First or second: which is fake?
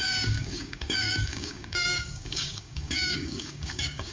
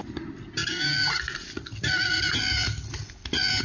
first